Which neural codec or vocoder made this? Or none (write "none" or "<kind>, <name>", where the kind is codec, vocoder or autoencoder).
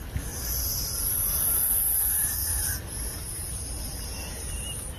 vocoder, BigVGAN v2